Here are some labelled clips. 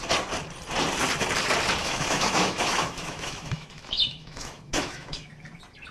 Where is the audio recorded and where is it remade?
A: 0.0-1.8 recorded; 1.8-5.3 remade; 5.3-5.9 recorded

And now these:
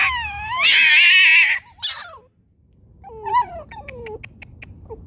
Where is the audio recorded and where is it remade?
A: 0.0-0.9 remade; 0.9-5.1 recorded